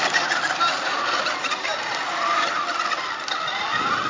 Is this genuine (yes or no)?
yes